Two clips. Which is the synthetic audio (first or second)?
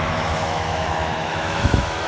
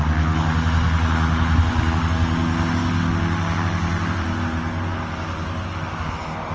first